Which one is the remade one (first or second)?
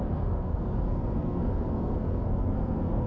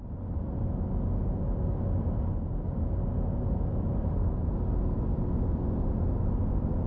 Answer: first